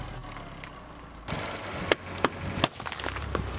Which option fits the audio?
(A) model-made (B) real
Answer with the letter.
B